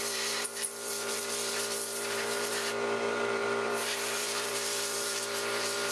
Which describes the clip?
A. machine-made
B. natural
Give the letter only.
A